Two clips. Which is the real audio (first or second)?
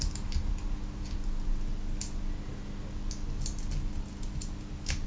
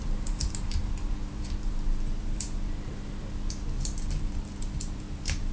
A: first